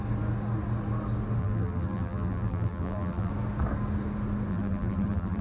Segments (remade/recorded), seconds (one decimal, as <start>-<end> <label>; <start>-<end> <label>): 0.0-1.4 recorded; 1.4-3.3 remade; 3.3-4.5 recorded; 4.5-5.4 remade